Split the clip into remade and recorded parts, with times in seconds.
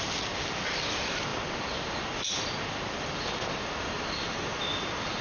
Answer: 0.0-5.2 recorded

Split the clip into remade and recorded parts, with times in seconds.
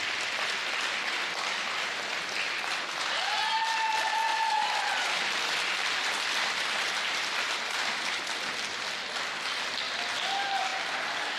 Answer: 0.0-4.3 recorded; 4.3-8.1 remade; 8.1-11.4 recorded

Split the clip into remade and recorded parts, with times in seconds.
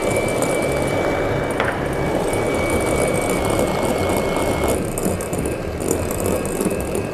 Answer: 0.0-7.1 recorded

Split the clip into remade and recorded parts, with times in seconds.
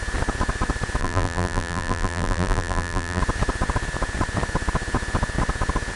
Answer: 0.0-1.0 recorded; 1.0-3.2 remade; 3.2-6.0 recorded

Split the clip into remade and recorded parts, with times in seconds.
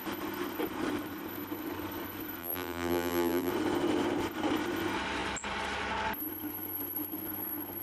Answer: 0.0-2.4 recorded; 2.4-3.5 remade; 3.5-7.8 recorded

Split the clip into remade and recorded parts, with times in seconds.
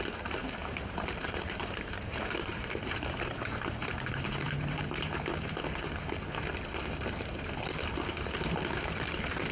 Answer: 0.0-0.6 recorded; 0.6-5.6 remade; 5.6-9.5 recorded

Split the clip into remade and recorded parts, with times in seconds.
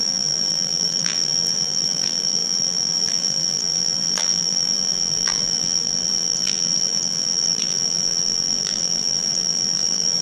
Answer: 0.0-10.2 remade